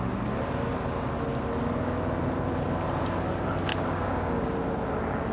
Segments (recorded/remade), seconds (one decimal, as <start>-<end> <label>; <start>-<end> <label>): 0.0-3.7 recorded; 3.7-4.5 remade; 4.5-5.3 recorded